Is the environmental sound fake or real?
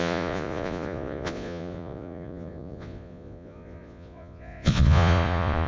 fake